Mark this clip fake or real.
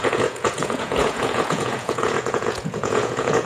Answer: fake